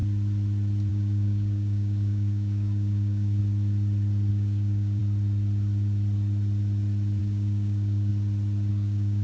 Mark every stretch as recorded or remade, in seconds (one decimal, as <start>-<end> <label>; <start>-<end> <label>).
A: 0.0-0.9 recorded; 0.9-3.4 remade; 3.4-4.3 recorded; 4.3-5.0 remade; 5.0-7.2 recorded; 7.2-8.1 remade; 8.1-8.7 recorded; 8.7-9.2 remade